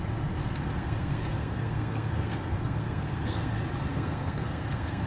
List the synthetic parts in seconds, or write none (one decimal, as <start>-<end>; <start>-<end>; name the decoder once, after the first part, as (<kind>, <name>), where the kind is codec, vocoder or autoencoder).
0.4-3.5 (codec, SNAC); 3.9-5.1

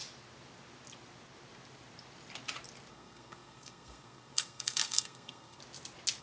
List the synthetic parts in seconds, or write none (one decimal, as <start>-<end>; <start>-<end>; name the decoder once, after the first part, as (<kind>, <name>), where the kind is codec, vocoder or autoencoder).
2.9-5.6 (codec, SNAC)